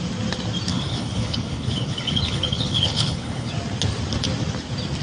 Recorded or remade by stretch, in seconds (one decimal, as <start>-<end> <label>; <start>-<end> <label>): 0.0-0.7 recorded; 0.7-3.5 remade; 3.5-5.0 recorded

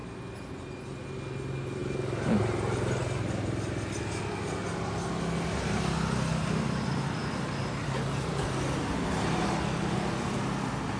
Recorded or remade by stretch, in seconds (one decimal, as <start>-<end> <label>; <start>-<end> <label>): 0.0-11.0 recorded

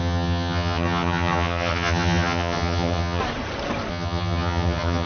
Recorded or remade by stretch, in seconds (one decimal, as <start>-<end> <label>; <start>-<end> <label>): 0.0-3.2 remade; 3.2-3.9 recorded; 3.9-5.1 remade

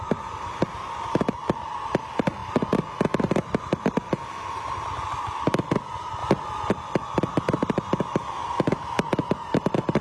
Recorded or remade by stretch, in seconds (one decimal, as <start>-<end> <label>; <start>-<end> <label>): 0.0-10.0 recorded

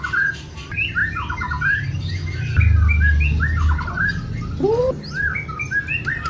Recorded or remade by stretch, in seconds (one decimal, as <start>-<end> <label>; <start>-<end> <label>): 0.0-6.3 recorded

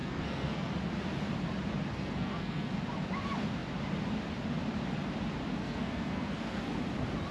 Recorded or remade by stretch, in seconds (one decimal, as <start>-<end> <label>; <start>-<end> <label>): 0.0-0.7 remade; 0.7-1.9 recorded; 1.9-2.8 remade; 2.8-5.6 recorded; 5.6-6.8 remade; 6.8-7.3 recorded